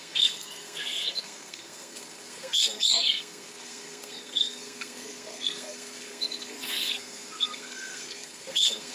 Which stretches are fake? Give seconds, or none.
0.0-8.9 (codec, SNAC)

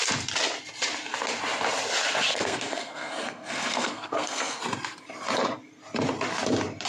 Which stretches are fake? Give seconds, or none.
2.3-4.6 (codec, SNAC)

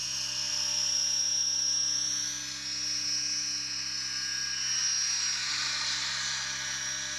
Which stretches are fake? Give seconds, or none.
none

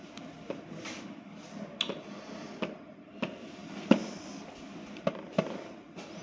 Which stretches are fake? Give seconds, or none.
none

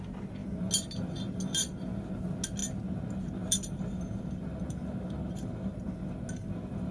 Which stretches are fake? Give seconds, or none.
none

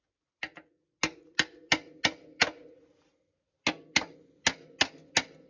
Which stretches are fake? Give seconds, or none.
none

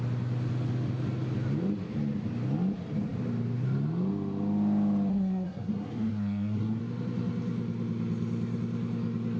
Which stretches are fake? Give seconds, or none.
5.1-6.8 (codec, SNAC)